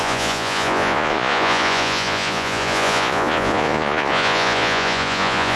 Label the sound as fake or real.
fake